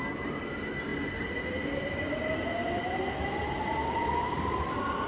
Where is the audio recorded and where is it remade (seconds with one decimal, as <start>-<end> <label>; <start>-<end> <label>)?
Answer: 0.0-5.1 recorded